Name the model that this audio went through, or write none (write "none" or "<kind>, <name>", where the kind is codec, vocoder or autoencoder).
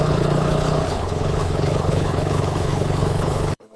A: codec, HILCodec